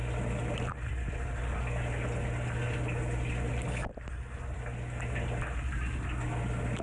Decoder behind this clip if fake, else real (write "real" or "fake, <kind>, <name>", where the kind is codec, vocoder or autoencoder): real